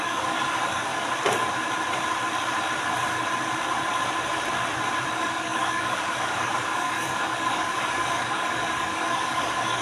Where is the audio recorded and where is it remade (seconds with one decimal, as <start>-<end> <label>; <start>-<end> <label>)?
0.0-0.9 remade; 0.9-5.1 recorded; 5.1-9.8 remade